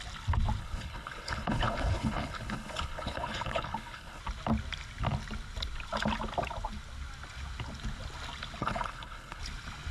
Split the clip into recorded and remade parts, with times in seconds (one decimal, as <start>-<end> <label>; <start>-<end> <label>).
0.0-0.6 recorded; 0.6-4.2 remade; 4.2-8.6 recorded; 8.6-9.4 remade; 9.4-9.9 recorded